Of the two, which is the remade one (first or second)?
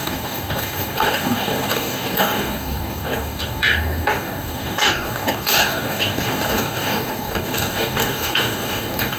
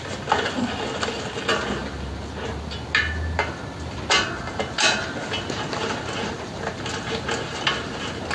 first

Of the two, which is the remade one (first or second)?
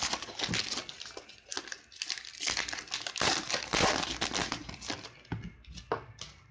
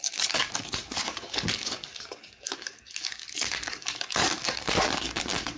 second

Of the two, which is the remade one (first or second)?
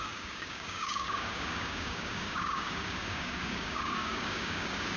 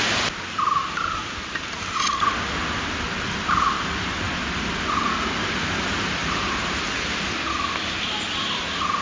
first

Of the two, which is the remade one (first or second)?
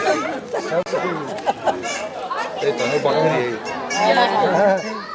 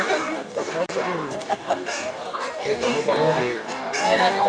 second